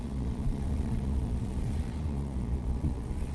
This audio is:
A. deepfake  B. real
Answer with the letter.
A